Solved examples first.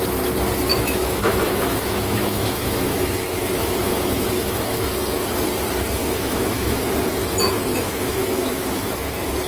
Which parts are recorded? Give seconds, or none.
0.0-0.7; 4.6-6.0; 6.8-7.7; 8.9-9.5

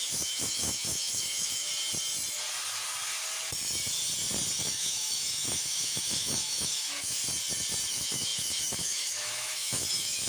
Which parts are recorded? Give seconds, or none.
1.7-4.6; 7.2-7.9

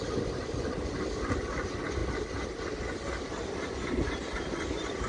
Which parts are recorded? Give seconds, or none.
0.0-5.1

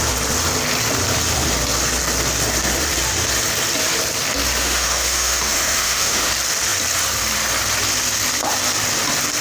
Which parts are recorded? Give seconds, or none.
0.0-4.6; 6.3-9.4

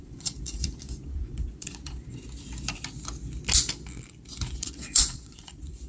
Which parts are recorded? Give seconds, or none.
2.1-4.5

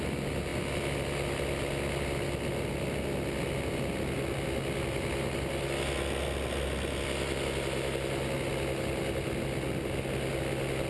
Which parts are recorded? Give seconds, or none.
0.0-10.9